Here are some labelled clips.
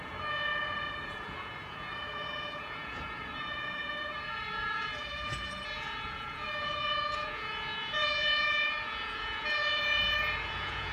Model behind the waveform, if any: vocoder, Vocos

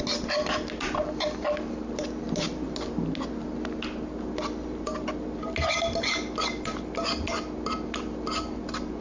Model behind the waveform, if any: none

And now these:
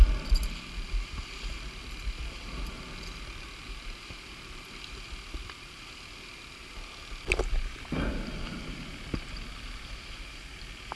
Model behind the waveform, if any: none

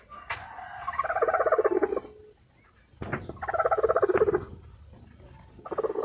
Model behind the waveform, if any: none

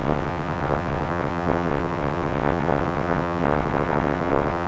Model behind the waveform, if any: vocoder, WaveNeXt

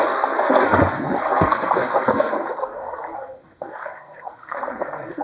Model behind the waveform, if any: codec, SNAC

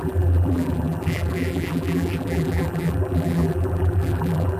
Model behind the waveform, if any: vocoder, BigVGAN v2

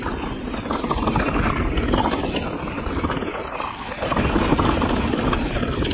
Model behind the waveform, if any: none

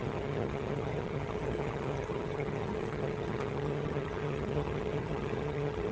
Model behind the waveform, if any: vocoder, HiFi-GAN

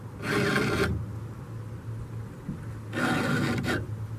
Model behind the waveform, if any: none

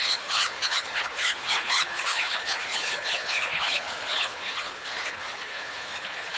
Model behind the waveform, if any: codec, HILCodec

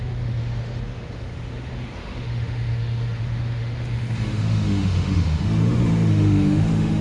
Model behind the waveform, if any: autoencoder, DAC-VAE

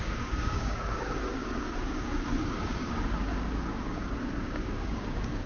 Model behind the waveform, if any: codec, DAC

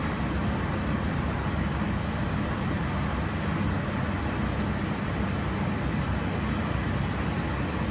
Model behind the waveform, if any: none